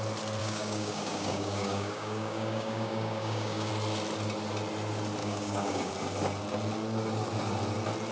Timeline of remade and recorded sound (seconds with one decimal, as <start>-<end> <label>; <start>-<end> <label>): 0.0-0.4 recorded; 0.4-3.7 remade; 3.7-5.2 recorded; 5.2-5.9 remade; 5.9-8.1 recorded